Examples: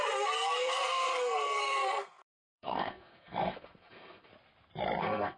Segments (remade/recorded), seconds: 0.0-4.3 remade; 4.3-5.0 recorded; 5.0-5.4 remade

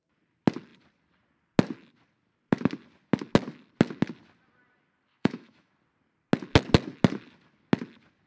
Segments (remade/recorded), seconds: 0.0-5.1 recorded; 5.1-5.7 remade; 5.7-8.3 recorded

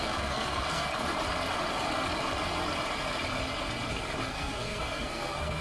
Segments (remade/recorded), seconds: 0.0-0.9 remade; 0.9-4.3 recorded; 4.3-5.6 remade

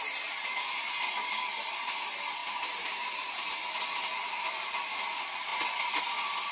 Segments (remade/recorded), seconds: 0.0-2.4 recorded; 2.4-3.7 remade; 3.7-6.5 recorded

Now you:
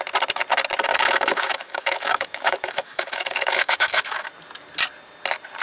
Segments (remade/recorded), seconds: 0.0-0.9 recorded; 0.9-4.3 remade; 4.3-5.6 recorded